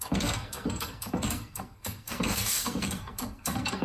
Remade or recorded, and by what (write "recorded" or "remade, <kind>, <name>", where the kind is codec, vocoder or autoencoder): remade, codec, SNAC